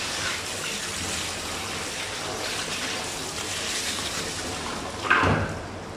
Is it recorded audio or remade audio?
recorded